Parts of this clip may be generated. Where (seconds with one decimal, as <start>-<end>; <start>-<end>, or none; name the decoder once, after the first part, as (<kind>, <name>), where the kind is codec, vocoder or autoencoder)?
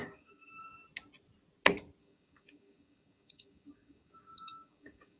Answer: 0.0-0.6 (codec, DAC); 2.0-5.2